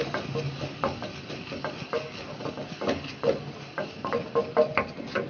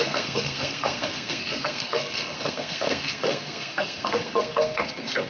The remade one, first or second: second